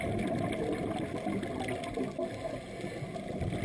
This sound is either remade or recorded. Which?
recorded